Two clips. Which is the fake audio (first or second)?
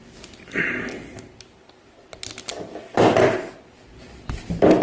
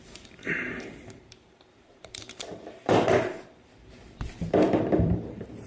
second